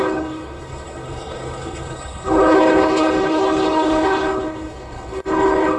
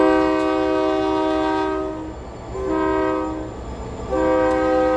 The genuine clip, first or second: second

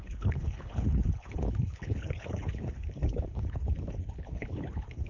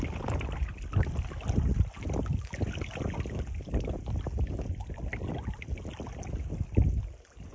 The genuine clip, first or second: second